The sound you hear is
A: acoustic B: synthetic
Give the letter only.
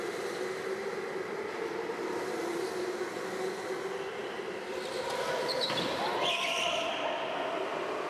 A